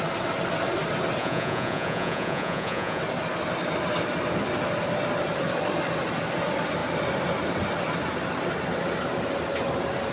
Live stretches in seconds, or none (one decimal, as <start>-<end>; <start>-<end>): 0.0-1.2; 3.0-10.1